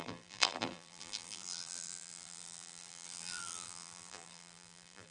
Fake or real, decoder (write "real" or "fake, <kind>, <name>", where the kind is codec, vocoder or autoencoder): fake, vocoder, BigVGAN v2